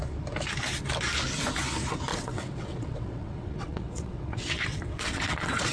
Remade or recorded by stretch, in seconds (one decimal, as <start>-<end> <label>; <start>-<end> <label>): 0.0-2.1 recorded; 2.1-5.7 remade